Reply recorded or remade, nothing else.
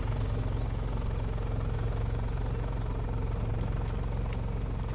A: recorded